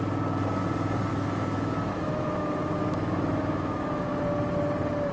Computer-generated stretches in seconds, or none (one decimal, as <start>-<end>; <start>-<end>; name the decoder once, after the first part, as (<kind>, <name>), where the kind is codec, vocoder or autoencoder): 1.1-4.2 (autoencoder, DAC-VAE)